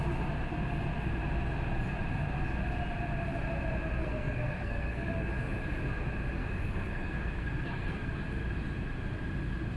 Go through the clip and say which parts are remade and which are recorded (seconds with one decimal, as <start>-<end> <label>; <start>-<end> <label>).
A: 0.0-4.0 recorded; 4.0-5.3 remade; 5.3-6.4 recorded; 6.4-8.1 remade; 8.1-9.8 recorded